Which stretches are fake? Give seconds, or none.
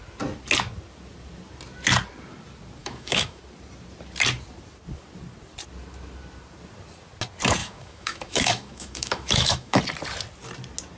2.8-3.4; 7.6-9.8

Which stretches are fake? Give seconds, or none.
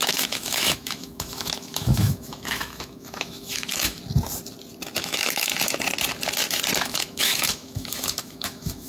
0.0-4.0; 4.9-5.5; 6.8-8.9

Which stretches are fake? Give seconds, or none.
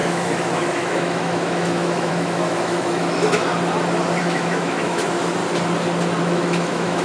0.0-3.5; 4.2-5.4; 6.2-7.0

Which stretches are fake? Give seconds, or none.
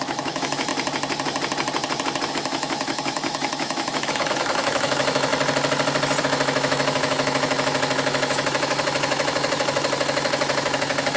0.0-0.7; 2.3-5.3; 6.2-11.2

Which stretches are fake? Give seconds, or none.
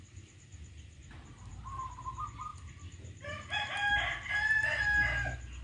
none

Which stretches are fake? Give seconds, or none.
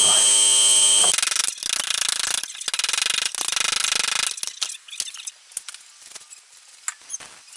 none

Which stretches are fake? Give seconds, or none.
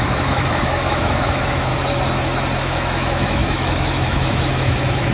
0.0-1.7; 2.6-5.1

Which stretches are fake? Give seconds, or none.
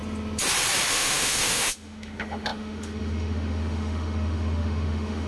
0.9-5.3